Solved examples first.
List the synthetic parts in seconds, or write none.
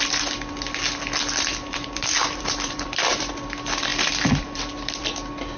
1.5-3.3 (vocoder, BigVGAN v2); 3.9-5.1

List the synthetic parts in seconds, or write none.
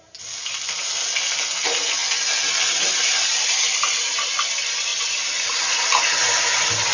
none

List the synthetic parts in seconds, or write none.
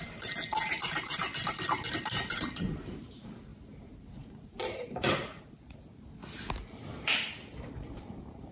0.0-1.2 (vocoder, BigVGAN v2); 1.7-6.2; 7.6-8.5